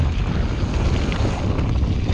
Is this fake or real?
real